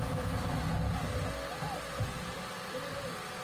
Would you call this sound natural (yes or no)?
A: yes